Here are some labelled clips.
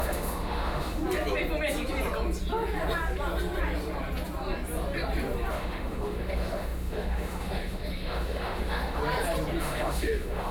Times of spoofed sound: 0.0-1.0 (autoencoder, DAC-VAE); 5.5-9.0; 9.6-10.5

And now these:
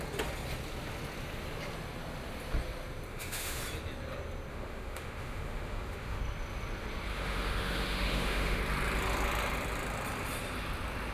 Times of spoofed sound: 3.1-3.6 (autoencoder, DAC-VAE); 4.5-6.2; 7.1-8.6

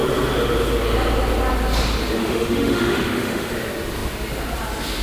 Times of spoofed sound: 2.2-3.5 (autoencoder, DAC-VAE)

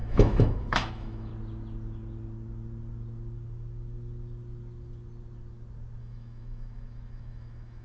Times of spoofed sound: 0.0-1.3 (autoencoder, DAC-VAE); 6.0-7.8

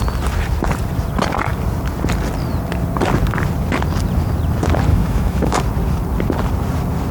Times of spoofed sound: 4.9-5.6 (autoencoder, DAC-VAE)

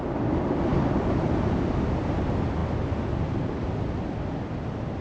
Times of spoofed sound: none

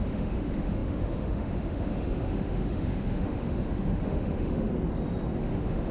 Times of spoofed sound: 0.0-4.7 (autoencoder, DAC-VAE); 5.4-5.9

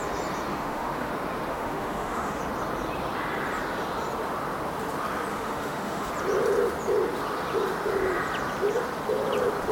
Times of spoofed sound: 0.5-1.1 (autoencoder, DAC-VAE); 1.5-2.4; 5.3-6.1